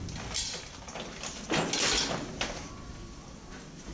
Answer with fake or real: real